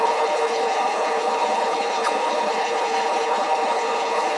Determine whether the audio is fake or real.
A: fake